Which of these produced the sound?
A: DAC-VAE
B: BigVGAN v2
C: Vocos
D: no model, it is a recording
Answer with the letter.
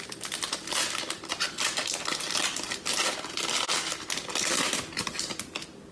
D